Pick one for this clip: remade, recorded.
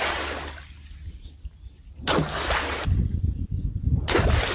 recorded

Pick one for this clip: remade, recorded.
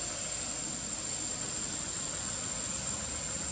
recorded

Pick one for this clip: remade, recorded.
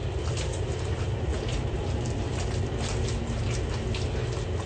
recorded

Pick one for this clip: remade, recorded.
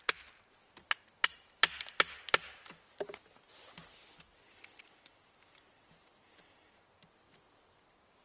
recorded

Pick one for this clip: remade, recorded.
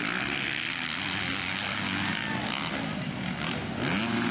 recorded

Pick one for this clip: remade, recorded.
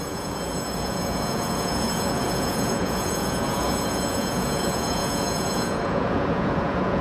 remade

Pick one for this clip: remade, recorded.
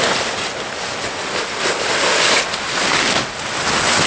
recorded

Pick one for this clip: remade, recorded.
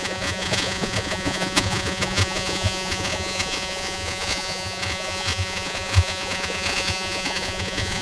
remade